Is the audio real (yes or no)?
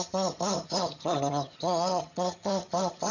no